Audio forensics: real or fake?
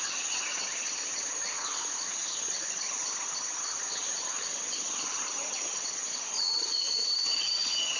fake